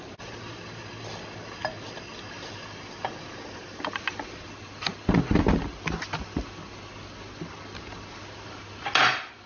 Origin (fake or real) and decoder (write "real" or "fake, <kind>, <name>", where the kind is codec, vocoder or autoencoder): real